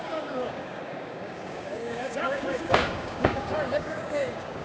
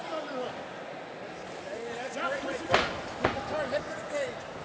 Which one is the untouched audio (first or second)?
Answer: second